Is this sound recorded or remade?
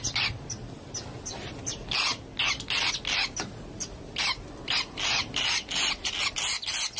recorded